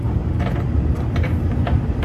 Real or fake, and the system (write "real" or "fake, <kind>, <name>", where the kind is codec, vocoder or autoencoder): real